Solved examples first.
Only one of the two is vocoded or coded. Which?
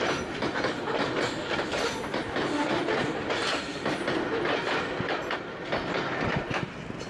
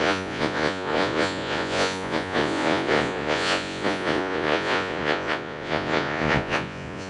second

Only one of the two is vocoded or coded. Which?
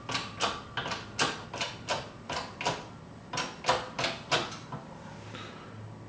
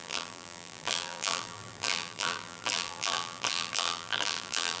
second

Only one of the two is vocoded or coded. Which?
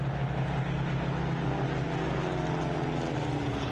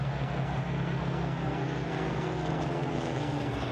second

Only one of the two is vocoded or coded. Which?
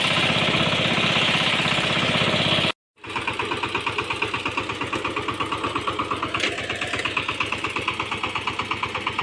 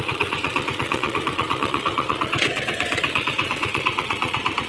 second